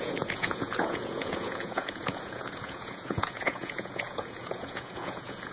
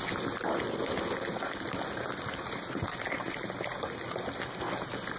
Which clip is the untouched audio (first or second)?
second